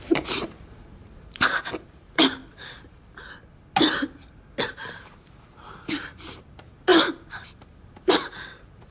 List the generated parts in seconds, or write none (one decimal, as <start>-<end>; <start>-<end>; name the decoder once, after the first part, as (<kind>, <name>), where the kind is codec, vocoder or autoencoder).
0.0-2.4 (vocoder, BigVGAN v2); 4.7-8.9